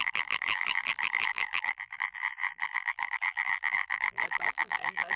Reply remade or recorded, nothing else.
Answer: remade